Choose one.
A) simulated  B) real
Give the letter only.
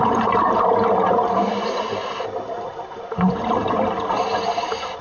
B